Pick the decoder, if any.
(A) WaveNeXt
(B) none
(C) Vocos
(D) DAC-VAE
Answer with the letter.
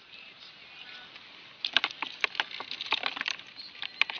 B